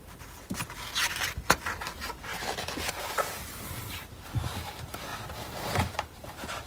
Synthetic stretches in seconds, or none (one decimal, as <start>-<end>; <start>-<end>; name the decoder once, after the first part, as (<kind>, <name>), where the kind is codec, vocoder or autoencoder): 2.3-2.9 (vocoder, BigVGAN v2)